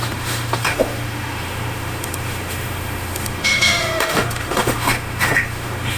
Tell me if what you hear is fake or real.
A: fake